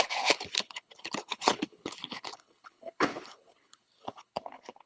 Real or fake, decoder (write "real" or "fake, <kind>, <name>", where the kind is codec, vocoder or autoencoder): fake, codec, HILCodec